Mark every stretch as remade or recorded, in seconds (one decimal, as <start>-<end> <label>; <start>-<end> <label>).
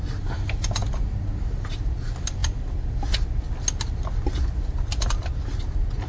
0.0-6.1 recorded